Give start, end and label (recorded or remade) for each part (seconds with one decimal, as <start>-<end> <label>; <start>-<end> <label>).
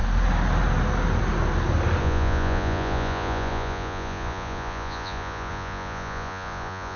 0.0-2.0 recorded; 2.0-7.0 remade